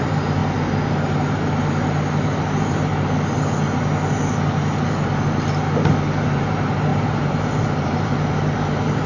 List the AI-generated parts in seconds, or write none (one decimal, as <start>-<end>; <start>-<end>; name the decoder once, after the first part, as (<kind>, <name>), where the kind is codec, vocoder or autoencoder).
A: 0.0-0.4 (vocoder, BigVGAN v2); 2.4-2.9; 6.2-9.1